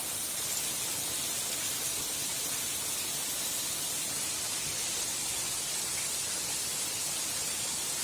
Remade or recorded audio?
remade